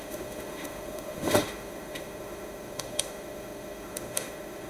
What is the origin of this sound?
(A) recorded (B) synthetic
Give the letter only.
B